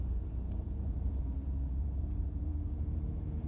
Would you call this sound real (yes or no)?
no